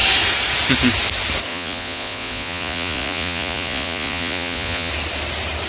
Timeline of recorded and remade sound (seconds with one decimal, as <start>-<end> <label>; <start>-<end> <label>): 0.0-1.5 recorded; 1.5-4.9 remade; 4.9-5.7 recorded